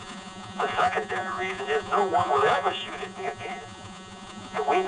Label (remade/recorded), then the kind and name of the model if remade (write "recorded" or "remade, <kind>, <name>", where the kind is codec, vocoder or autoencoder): remade, vocoder, Vocos